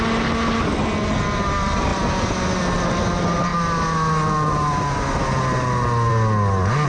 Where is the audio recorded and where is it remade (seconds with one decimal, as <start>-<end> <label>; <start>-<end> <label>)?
0.0-6.9 recorded